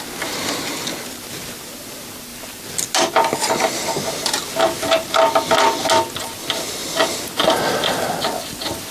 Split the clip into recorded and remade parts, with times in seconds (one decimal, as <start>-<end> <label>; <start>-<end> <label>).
0.0-8.9 recorded